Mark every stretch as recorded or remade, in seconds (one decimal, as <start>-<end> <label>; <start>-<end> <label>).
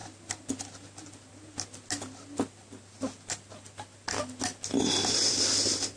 0.0-6.0 recorded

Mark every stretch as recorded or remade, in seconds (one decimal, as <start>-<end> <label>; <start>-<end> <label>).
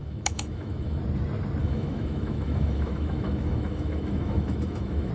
0.0-1.0 remade; 1.0-1.6 recorded; 1.6-5.1 remade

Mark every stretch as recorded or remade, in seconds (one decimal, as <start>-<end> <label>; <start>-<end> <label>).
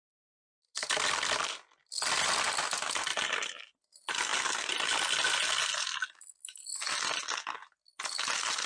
0.0-8.7 recorded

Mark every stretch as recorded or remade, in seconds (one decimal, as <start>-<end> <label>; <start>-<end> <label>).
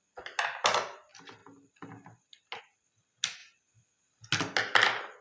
0.0-5.2 recorded